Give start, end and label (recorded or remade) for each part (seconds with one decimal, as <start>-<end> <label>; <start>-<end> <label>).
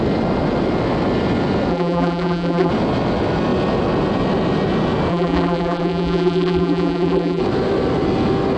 0.0-1.7 recorded; 1.7-2.7 remade; 2.7-5.1 recorded; 5.1-7.4 remade; 7.4-8.6 recorded